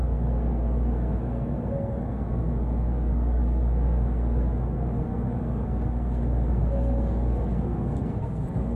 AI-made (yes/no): yes